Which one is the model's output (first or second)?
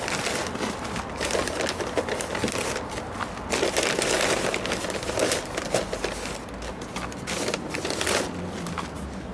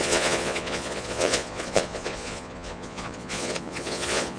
second